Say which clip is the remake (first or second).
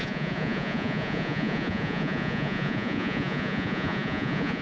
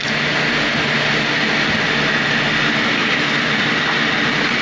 first